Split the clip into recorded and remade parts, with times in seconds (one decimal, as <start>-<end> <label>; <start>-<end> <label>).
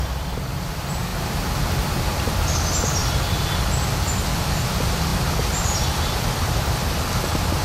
0.0-7.6 recorded